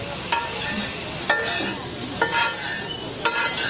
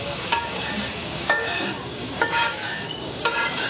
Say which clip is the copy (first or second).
second